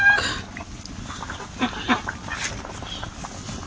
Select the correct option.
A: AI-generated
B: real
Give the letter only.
B